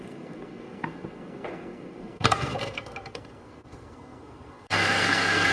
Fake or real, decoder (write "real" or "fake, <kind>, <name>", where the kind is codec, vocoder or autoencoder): fake, codec, SNAC